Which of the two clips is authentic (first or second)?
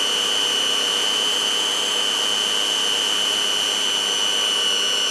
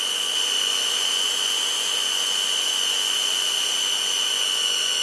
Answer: first